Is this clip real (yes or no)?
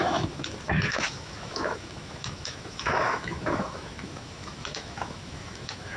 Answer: no